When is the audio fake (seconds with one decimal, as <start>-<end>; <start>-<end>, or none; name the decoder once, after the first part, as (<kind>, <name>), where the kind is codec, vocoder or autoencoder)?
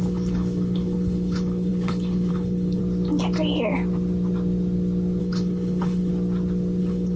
0.0-2.8 (codec, HILCodec); 5.2-6.1; 6.8-7.2